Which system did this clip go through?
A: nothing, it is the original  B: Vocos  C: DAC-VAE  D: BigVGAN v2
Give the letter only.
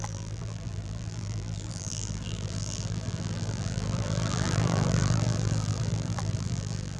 D